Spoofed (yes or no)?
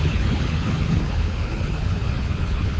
yes